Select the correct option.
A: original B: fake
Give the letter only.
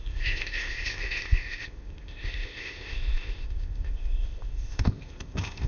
B